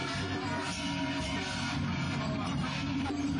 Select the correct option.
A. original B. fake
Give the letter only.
A